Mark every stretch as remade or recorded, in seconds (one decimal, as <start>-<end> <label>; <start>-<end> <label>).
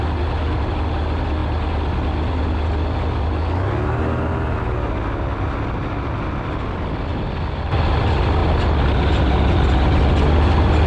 0.0-10.9 recorded